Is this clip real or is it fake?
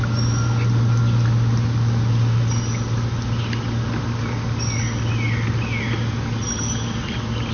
real